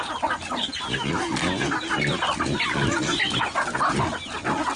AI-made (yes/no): no